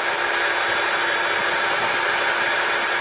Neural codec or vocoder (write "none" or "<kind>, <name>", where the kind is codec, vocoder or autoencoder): none